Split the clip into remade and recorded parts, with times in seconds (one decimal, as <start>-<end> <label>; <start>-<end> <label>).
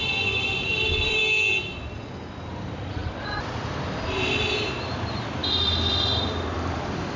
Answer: 0.0-1.2 remade; 1.2-2.6 recorded; 2.6-7.2 remade